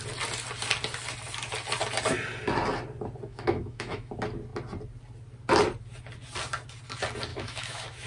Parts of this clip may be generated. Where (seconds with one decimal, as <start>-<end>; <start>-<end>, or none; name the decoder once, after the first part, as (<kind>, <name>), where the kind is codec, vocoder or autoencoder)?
3.3-4.1 (autoencoder, DAC-VAE); 7.3-8.1